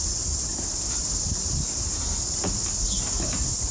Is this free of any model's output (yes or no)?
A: yes